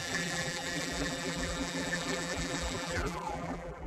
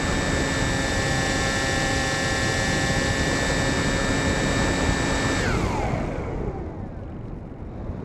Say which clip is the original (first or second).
second